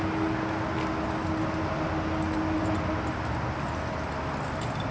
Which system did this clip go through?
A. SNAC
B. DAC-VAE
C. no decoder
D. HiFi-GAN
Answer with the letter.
C